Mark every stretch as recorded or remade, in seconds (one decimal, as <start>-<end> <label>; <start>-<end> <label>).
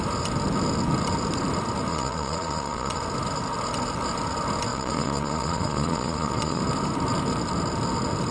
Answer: 0.0-1.9 recorded; 1.9-3.0 remade; 3.0-4.7 recorded; 4.7-6.6 remade; 6.6-8.3 recorded